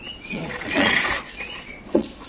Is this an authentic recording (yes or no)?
no